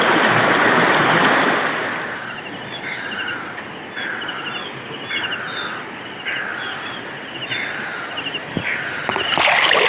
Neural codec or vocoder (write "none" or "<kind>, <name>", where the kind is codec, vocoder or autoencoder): none